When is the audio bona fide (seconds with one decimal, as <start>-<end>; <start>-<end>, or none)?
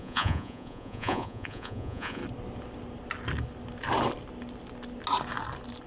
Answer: 2.2-5.9